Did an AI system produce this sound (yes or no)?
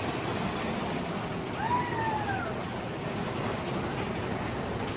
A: no